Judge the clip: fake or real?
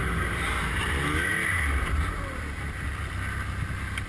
real